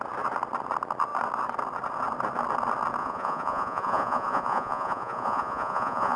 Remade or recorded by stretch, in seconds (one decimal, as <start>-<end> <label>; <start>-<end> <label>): 0.0-3.0 recorded; 3.0-6.2 remade